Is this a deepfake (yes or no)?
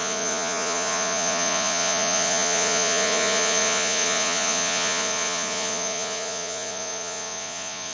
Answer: yes